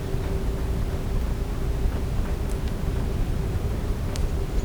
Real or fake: real